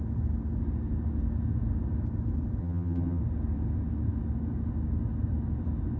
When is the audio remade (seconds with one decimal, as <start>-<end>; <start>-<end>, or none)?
2.6-3.2